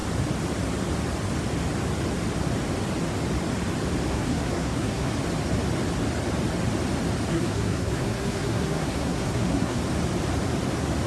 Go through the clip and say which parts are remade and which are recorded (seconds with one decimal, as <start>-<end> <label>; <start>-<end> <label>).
0.0-4.1 recorded; 4.1-5.1 remade; 5.1-7.3 recorded; 7.3-9.8 remade; 9.8-11.1 recorded